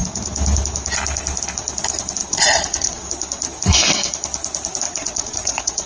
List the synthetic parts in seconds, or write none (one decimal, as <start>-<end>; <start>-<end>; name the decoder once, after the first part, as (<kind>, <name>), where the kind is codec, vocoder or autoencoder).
2.2-3.0 (vocoder, Vocos); 5.0-5.9